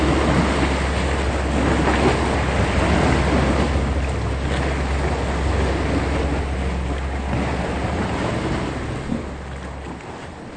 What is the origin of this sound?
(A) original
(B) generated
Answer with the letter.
A